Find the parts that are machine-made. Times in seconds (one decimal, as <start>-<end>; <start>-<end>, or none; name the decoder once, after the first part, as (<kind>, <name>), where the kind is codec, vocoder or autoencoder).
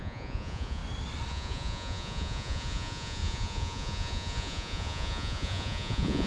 0.0-0.8 (vocoder, Vocos); 1.3-6.3